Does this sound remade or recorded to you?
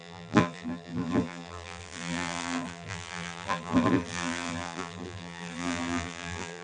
remade